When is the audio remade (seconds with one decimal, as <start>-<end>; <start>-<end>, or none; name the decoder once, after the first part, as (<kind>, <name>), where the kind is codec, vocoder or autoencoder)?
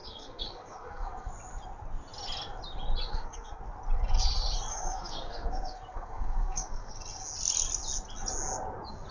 0.0-1.3 (codec, SNAC); 3.1-3.6; 4.7-6.9